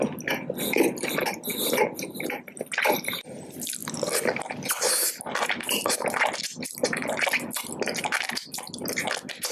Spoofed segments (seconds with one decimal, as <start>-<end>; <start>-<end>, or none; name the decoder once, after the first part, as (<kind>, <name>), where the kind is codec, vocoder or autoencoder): none